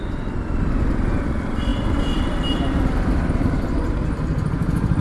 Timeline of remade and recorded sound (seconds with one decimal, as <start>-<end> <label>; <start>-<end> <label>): 0.0-5.0 recorded